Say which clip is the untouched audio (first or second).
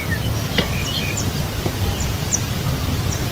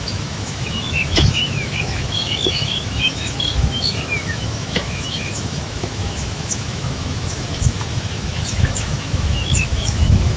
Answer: first